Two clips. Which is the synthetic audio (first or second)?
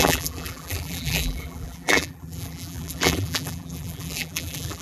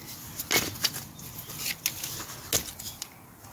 first